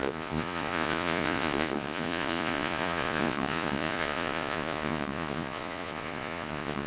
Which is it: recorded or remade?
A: remade